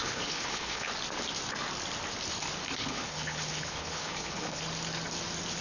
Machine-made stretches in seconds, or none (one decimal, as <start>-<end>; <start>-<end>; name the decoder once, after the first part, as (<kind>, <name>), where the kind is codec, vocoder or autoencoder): 0.0-0.9 (codec, HILCodec); 2.8-4.6